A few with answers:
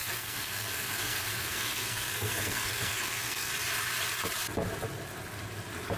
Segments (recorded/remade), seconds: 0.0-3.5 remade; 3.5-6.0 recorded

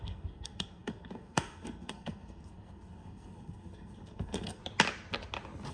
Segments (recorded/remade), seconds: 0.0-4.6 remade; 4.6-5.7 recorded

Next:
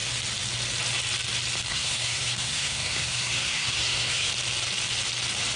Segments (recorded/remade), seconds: 0.0-1.7 recorded; 1.7-4.3 remade; 4.3-5.6 recorded